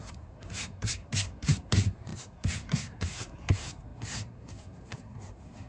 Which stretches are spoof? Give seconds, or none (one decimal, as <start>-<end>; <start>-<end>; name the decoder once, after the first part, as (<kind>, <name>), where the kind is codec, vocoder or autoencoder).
0.0-5.7 (codec, SNAC)